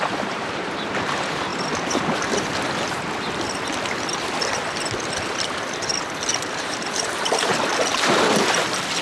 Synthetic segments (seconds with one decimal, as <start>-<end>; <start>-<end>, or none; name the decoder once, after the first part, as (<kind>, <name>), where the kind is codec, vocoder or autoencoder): 0.0-1.5 (vocoder, BigVGAN v2); 6.5-7.5

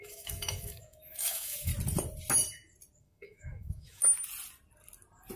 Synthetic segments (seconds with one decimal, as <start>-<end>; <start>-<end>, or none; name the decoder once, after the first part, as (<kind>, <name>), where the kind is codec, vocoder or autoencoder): 0.0-1.7 (autoencoder, DAC-VAE); 3.0-4.0

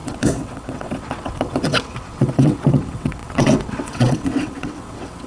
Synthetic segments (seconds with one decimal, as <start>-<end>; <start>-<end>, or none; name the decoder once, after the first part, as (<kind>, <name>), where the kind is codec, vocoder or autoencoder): 0.0-5.3 (vocoder, WaveNeXt)

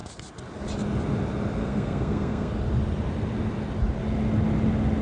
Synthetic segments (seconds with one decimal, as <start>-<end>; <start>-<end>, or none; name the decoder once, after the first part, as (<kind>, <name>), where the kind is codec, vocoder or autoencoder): 1.6-2.5 (codec, SNAC)

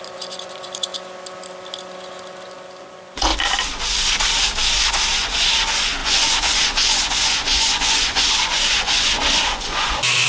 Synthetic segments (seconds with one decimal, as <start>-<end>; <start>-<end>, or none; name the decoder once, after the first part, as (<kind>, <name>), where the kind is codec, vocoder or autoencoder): 0.0-0.9 (vocoder, Vocos); 2.8-3.3; 5.1-10.3